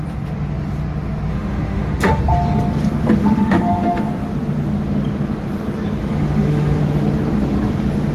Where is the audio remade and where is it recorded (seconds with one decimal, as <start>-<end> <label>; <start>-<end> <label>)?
0.0-1.3 recorded; 1.3-2.2 remade; 2.2-3.2 recorded; 3.2-4.1 remade; 4.1-6.0 recorded; 6.0-6.8 remade; 6.8-8.1 recorded